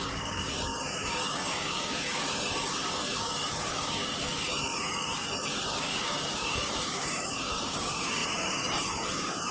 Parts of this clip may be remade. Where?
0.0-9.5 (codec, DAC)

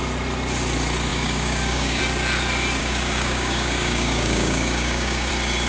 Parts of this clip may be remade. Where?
1.1-2.0 (codec, DAC); 2.8-5.3

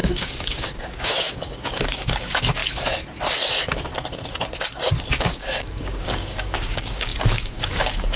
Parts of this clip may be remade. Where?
0.0-2.6 (codec, DAC); 5.1-8.2

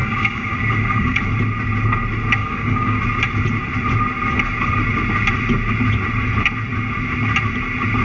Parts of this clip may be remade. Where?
0.0-1.2 (codec, DAC); 2.4-3.0

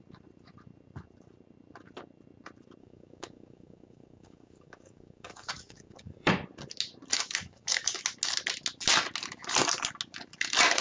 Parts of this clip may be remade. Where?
2.8-6.3 (codec, DAC); 7.1-8.0

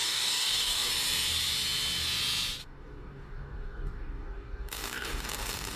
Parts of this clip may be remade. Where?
0.0-0.9 (codec, DAC); 2.6-5.8

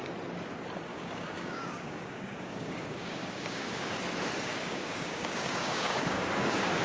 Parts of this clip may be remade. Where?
0.9-4.0 (codec, DAC); 4.5-6.8